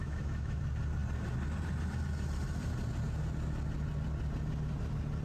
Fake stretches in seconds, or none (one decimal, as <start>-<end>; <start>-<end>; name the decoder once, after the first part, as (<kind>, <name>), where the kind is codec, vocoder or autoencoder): 0.0-0.6 (autoencoder, DAC-VAE)